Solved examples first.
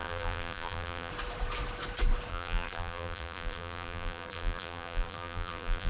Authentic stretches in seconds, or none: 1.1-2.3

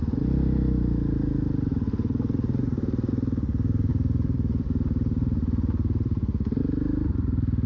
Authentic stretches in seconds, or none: 0.0-1.7; 3.1-3.9; 6.6-7.7